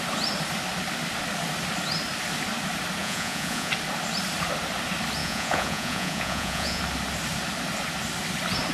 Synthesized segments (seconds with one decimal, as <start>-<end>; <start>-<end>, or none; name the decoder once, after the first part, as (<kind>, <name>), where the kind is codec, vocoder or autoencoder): 3.0-3.7 (vocoder, Vocos); 5.2-6.8